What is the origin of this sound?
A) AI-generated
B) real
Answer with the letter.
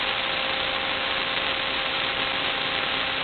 B